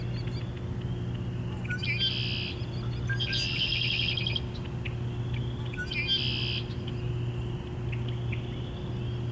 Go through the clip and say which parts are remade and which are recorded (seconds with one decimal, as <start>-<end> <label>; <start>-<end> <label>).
0.0-9.3 recorded